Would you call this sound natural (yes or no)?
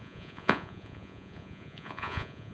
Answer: no